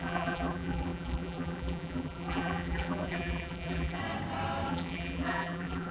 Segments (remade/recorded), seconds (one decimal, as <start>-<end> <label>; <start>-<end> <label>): 0.0-4.0 remade; 4.0-4.7 recorded; 4.7-5.9 remade